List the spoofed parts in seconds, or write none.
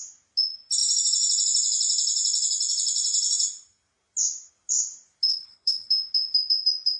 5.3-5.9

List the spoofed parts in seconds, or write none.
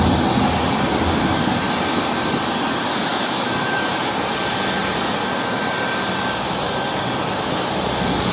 3.1-4.1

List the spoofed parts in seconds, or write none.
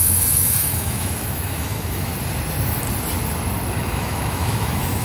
0.0-2.1; 3.8-5.0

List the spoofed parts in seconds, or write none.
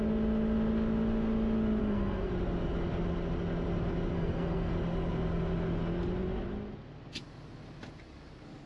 1.8-2.3; 4.1-4.7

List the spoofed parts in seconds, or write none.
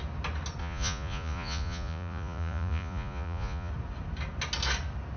0.6-3.7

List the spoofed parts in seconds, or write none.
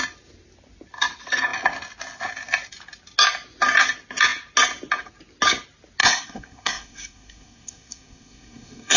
6.0-9.0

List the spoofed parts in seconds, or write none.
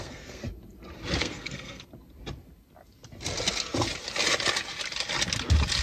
0.0-0.4; 1.2-1.9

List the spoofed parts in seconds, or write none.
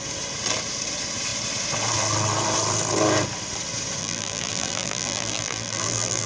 4.0-6.3